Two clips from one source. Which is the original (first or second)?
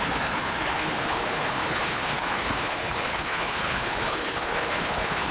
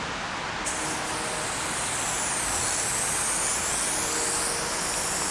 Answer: second